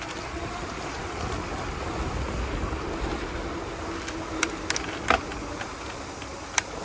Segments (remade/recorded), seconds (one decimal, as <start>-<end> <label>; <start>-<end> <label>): 0.0-6.8 recorded